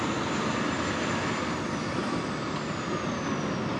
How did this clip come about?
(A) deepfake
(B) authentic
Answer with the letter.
B